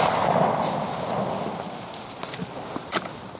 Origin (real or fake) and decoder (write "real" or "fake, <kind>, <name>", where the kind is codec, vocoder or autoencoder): real